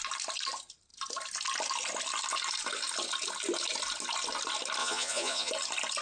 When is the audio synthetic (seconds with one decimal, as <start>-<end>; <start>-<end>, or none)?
4.8-5.5